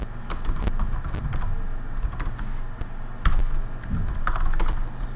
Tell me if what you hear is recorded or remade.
recorded